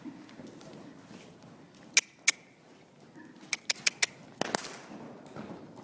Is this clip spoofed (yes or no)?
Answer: no